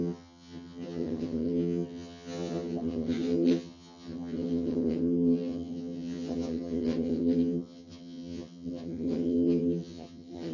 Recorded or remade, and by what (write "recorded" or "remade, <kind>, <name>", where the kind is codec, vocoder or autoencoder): remade, vocoder, HiFi-GAN